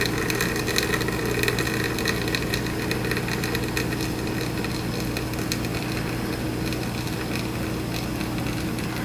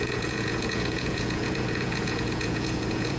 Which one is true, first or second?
first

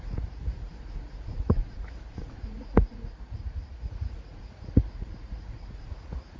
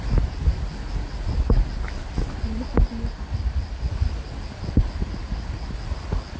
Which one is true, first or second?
second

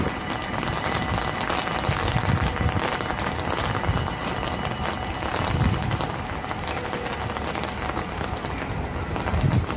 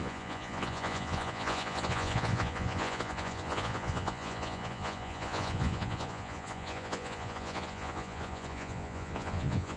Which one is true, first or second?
first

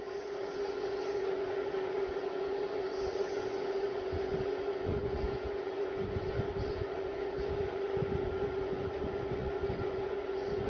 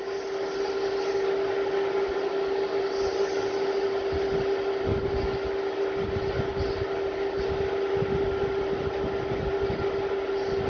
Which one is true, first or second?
second